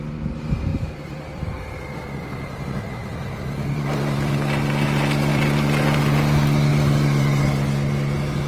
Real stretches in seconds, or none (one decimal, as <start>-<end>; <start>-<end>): 0.0-0.7; 1.4-3.0; 4.3-5.3; 6.0-6.7; 7.4-8.5